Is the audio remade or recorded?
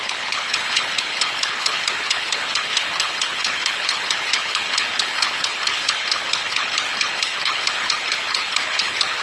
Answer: remade